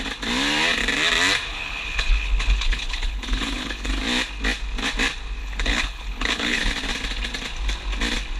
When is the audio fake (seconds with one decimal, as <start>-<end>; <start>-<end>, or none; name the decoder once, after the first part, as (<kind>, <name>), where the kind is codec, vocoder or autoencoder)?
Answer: 1.5-3.9 (codec, HILCodec); 5.4-6.7